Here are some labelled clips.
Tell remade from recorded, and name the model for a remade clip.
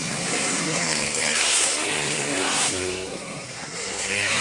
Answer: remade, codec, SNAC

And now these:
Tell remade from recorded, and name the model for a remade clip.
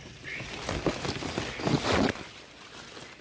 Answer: recorded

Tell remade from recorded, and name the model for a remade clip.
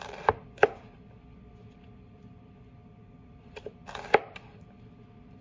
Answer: recorded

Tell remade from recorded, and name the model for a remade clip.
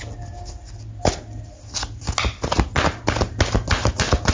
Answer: recorded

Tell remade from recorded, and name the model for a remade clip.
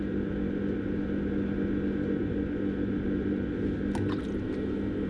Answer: recorded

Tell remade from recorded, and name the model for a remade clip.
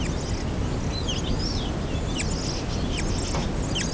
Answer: recorded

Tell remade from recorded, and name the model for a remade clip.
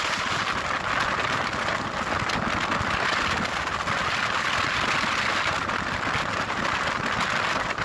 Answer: recorded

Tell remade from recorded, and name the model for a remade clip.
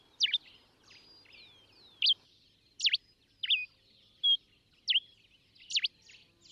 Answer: recorded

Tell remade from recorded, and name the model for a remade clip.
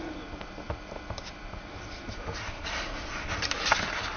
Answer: recorded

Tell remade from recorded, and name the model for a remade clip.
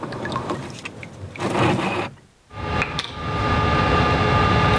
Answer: recorded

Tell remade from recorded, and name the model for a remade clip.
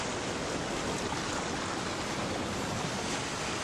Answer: recorded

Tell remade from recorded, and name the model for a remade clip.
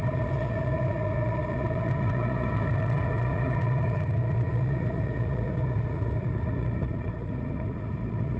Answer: remade, vocoder, Vocos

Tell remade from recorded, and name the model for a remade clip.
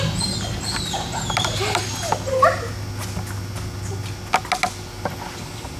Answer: recorded